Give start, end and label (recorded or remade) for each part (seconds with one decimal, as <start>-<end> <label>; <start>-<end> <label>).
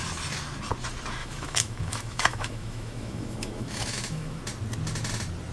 0.0-1.2 recorded; 1.2-4.4 remade; 4.4-5.5 recorded